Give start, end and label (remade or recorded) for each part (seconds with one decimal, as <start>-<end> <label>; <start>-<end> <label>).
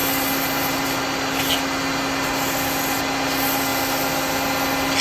0.0-5.0 recorded